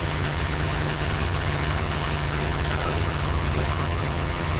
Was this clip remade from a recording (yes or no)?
yes